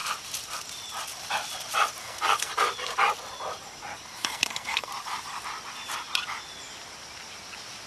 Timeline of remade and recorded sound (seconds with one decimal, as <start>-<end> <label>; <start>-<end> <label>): 0.0-2.0 recorded; 2.0-2.5 remade; 2.5-4.2 recorded; 4.2-4.9 remade; 4.9-7.9 recorded